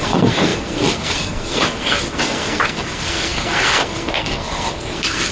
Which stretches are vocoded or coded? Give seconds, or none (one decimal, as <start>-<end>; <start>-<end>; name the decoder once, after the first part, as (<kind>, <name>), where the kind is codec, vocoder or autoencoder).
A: 0.0-5.3 (codec, SNAC)